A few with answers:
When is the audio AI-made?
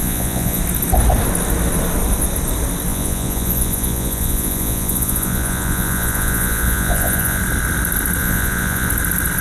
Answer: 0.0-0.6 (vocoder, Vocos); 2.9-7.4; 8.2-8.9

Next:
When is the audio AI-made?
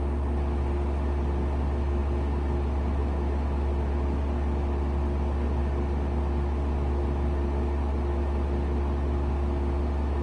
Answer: none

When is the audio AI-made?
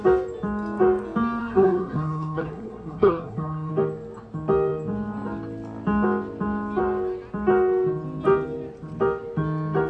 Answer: 1.4-3.7 (codec, SNAC)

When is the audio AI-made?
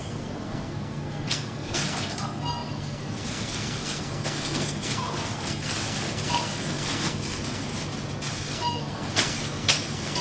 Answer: 0.0-7.7 (codec, SNAC); 8.3-10.2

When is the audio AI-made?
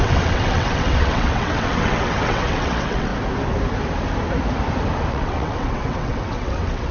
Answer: 0.0-3.1 (vocoder, WaveNeXt); 5.1-6.9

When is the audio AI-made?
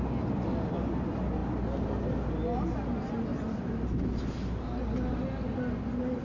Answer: none